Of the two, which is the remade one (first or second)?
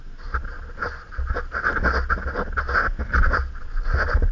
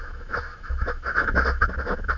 second